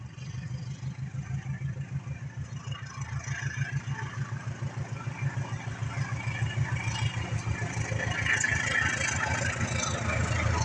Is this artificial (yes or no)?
no